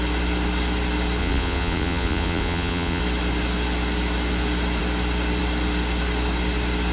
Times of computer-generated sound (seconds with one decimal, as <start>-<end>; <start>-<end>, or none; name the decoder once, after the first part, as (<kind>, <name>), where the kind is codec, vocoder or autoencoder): 1.2-3.0 (vocoder, Vocos)